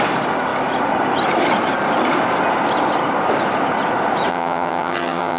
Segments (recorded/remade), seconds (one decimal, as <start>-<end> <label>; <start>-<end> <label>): 0.0-4.3 recorded; 4.3-5.4 remade